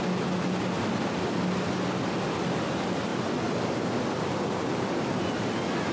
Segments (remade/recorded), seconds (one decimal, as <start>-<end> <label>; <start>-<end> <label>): 0.0-5.9 recorded